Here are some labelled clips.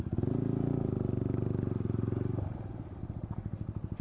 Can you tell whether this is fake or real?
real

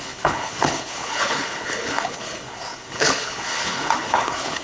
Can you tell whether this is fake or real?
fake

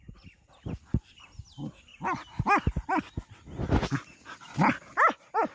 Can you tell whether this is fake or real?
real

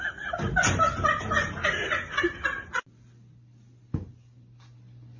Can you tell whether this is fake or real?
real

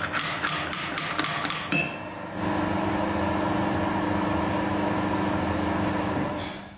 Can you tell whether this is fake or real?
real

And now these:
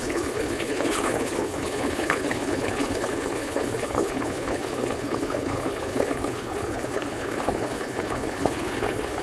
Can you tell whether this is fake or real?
fake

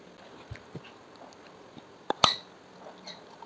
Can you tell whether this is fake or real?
real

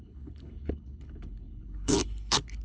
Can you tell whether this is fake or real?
fake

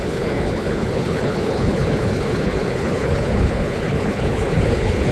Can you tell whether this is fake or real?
fake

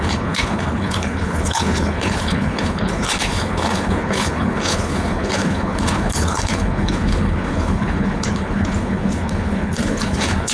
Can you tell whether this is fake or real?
fake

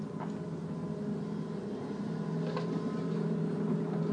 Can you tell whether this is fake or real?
real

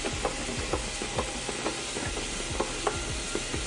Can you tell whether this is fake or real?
real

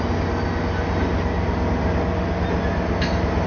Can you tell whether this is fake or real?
real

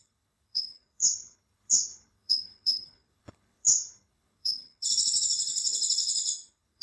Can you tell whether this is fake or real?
fake